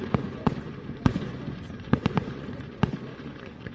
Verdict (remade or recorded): remade